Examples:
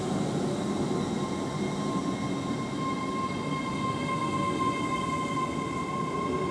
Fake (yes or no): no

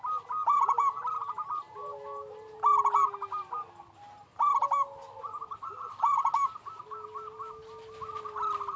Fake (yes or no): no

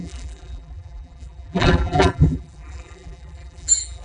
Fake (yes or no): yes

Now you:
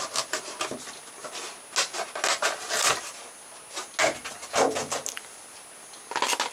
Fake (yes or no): no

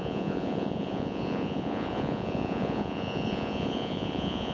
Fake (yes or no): yes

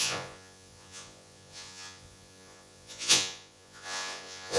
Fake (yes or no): yes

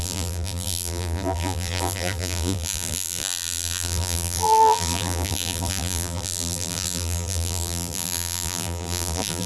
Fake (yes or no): yes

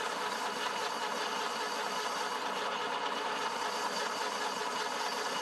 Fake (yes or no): no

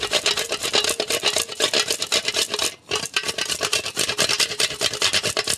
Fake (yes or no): no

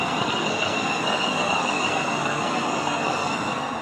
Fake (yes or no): yes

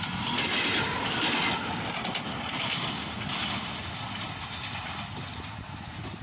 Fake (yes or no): no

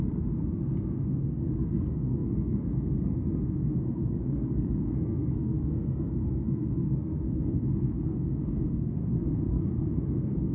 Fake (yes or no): yes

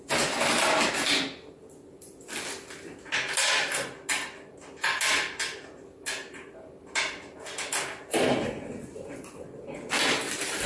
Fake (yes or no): no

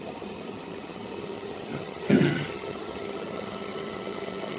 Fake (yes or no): yes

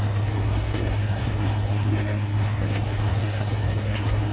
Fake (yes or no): yes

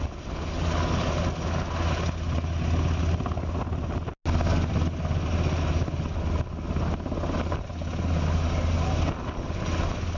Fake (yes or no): no